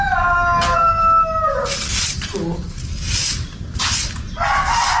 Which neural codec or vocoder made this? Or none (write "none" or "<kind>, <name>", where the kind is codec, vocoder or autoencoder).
none